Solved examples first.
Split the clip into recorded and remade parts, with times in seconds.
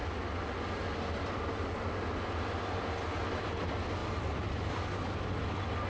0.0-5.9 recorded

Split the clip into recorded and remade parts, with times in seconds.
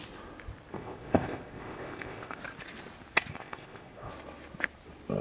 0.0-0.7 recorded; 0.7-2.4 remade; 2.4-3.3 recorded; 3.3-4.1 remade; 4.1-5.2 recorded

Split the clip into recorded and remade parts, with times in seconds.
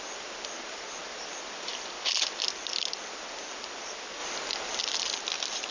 0.0-5.7 recorded